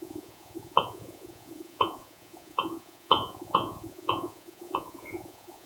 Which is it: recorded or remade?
remade